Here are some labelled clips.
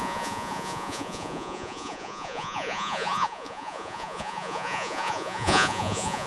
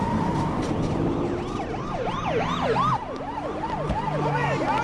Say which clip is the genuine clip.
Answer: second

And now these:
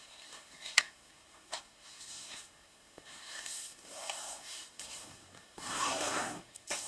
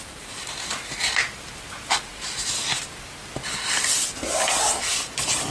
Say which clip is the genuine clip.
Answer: second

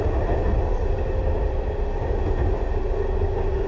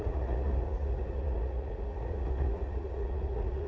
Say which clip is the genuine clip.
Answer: first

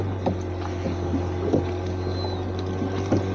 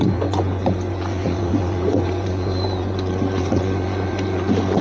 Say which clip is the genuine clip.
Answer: first